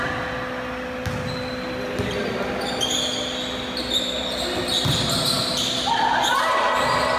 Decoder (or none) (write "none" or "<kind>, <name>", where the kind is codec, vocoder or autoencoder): none